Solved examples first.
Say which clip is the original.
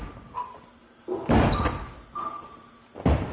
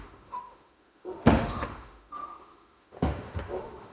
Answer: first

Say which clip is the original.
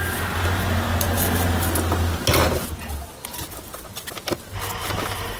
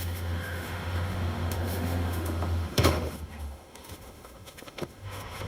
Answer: first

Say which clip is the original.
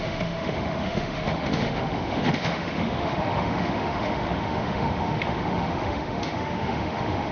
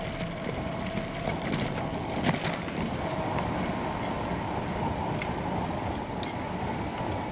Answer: second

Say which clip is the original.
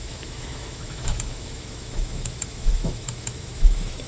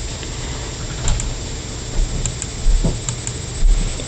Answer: second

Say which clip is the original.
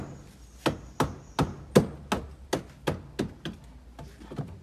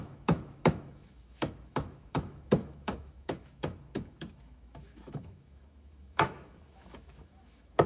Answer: first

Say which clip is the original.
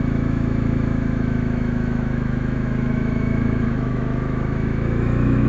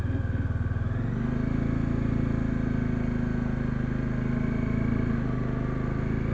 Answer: second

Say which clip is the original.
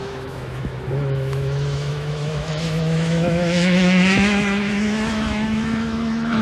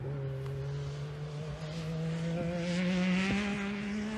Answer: second